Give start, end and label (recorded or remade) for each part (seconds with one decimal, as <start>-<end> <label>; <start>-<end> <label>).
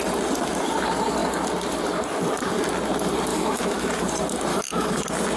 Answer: 0.0-3.3 recorded; 3.3-3.9 remade; 3.9-4.5 recorded; 4.5-5.0 remade; 5.0-5.4 recorded